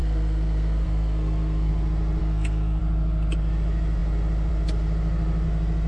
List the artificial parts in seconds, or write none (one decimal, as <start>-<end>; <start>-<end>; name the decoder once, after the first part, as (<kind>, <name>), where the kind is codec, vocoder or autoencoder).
0.0-1.7 (codec, SNAC); 2.2-2.8

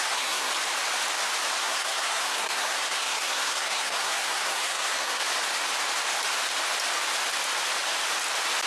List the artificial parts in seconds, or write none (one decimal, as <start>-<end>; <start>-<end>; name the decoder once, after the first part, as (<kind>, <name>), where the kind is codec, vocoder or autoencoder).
0.0-0.5 (codec, SNAC); 1.6-5.2

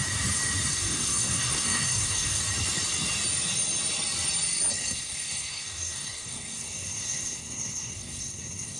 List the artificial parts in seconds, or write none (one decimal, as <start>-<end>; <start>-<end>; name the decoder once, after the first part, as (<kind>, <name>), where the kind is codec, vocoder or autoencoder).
0.7-2.4 (codec, SNAC); 4.7-8.8